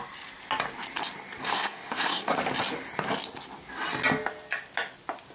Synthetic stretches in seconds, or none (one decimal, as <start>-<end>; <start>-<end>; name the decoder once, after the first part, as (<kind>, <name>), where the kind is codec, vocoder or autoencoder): 1.4-2.4 (codec, SNAC)